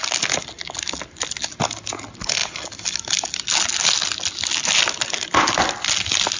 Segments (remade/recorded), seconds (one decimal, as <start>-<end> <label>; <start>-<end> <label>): 0.0-6.4 recorded